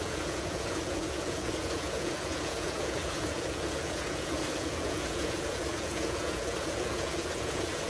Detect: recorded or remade remade